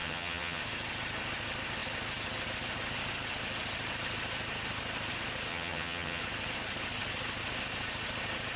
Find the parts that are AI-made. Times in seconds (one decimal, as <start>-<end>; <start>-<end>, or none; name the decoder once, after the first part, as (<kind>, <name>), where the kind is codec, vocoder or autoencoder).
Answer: 0.0-0.6 (vocoder, HiFi-GAN); 5.5-6.2